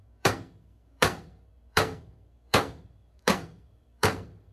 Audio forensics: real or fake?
fake